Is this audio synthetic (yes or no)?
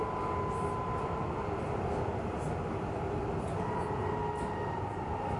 no